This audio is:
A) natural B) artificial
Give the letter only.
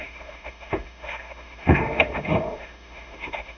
B